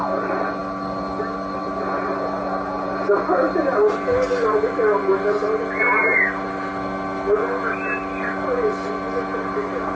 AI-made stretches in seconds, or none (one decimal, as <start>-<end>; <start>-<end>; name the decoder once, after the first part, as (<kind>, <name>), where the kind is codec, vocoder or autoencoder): none